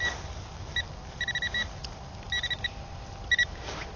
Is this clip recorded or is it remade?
recorded